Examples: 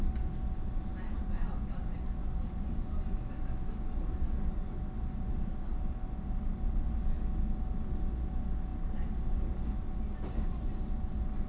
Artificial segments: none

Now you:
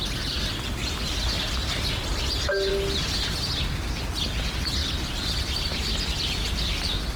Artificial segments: 0.8-2.7 (vocoder, BigVGAN v2); 4.8-5.9

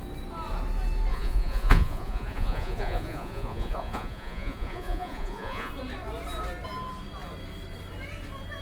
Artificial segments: 1.1-5.7 (vocoder, Vocos)

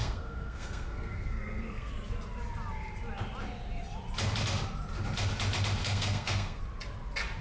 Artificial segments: 0.0-1.9 (codec, SNAC); 5.8-6.6

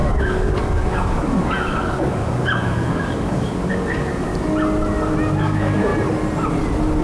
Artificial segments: 0.0-4.3 (codec, DAC); 5.4-5.9

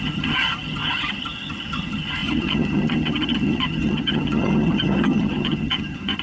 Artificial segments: 0.0-6.2 (vocoder, HiFi-GAN)